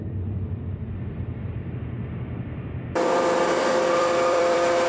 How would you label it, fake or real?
fake